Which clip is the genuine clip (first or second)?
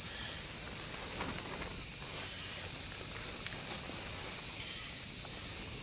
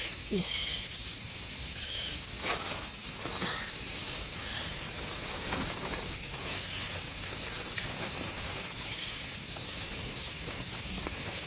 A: first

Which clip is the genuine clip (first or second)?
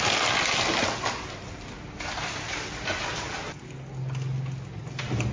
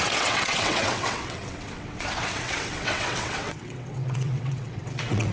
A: first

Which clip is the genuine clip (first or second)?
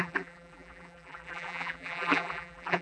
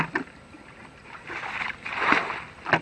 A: second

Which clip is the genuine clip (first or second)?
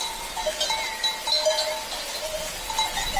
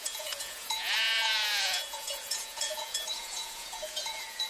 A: first